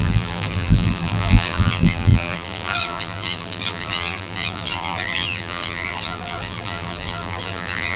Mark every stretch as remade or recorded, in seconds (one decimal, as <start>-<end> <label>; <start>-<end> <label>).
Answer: 0.0-8.0 remade